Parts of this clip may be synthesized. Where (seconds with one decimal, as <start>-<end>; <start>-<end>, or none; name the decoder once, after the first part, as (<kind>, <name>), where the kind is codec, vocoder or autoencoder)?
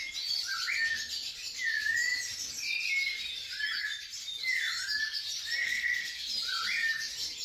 5.6-6.2 (codec, SNAC)